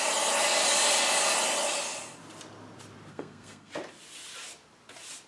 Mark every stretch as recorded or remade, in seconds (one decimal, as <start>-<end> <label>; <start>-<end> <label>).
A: 0.0-3.1 recorded; 3.1-3.7 remade; 3.7-5.3 recorded